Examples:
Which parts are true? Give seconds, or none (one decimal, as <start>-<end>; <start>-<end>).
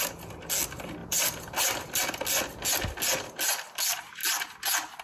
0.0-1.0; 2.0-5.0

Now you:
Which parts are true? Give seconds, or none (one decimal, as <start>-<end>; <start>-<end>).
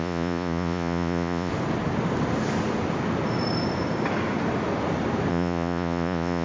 1.5-5.3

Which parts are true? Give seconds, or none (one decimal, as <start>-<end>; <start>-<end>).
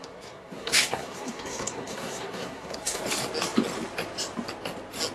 3.0-5.1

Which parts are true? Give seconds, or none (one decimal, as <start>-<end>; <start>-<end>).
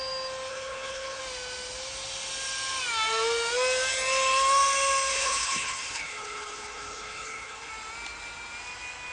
0.0-0.5; 1.2-5.1; 7.7-9.1